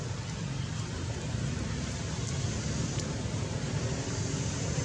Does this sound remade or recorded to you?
recorded